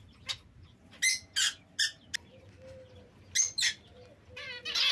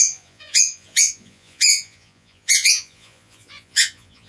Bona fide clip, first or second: first